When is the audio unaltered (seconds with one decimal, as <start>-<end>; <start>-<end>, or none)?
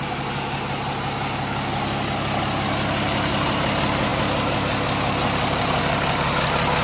0.0-6.8